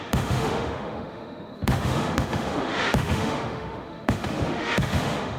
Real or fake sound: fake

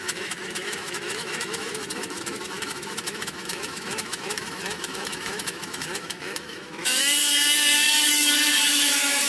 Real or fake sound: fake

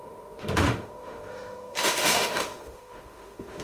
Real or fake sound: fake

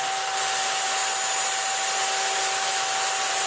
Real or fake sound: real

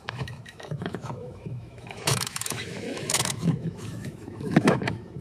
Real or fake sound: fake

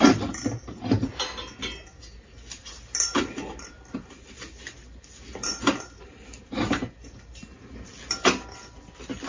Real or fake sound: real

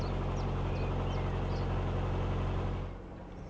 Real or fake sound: real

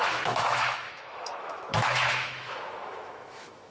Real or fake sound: fake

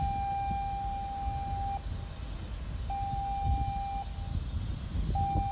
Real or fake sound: real